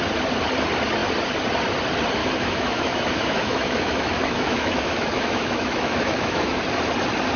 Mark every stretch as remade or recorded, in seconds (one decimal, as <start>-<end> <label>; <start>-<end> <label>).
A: 0.0-2.2 recorded; 2.2-6.6 remade; 6.6-7.4 recorded